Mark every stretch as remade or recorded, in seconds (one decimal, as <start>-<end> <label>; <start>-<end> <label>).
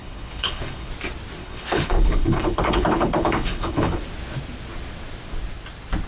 0.0-0.9 remade; 0.9-1.4 recorded; 1.4-4.0 remade; 4.0-6.1 recorded